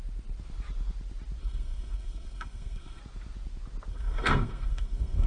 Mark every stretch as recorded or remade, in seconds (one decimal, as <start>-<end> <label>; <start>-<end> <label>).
0.0-1.4 recorded; 1.4-3.0 remade; 3.0-3.9 recorded; 3.9-5.3 remade